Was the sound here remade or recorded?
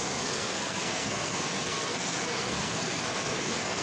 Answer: remade